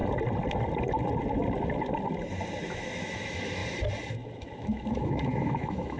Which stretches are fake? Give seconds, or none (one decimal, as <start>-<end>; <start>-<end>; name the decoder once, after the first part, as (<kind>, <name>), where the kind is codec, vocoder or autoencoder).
2.6-3.6 (autoencoder, DAC-VAE); 4.1-6.0